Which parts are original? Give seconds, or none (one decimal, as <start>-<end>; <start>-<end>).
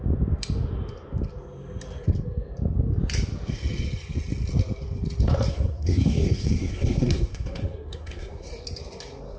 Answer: 0.0-5.5; 8.5-9.4